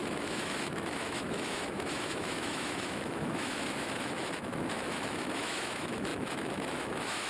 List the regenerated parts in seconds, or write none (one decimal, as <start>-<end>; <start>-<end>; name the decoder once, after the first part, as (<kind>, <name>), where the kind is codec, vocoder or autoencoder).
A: 0.0-7.3 (autoencoder, DAC-VAE)